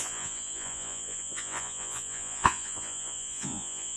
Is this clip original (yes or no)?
no